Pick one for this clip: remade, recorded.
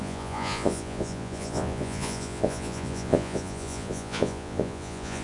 remade